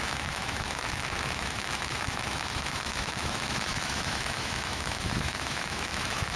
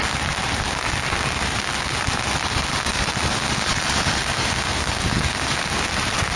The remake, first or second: first